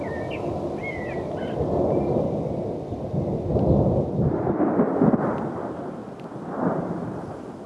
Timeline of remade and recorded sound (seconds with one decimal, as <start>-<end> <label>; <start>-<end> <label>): 0.0-7.7 recorded